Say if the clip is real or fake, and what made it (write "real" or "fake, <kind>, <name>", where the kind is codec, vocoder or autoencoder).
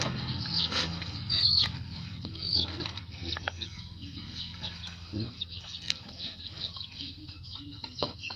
fake, codec, SNAC